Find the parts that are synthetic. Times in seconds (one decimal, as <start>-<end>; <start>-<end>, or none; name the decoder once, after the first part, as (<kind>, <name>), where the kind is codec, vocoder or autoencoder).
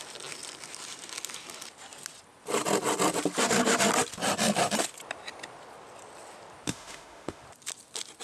6.7-7.4 (autoencoder, DAC-VAE)